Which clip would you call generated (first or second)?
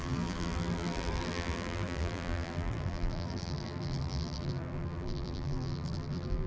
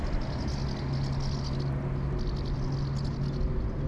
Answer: first